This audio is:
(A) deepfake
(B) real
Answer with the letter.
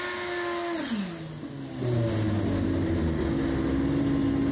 B